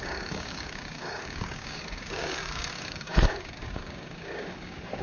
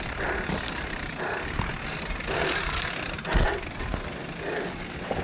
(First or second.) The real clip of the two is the second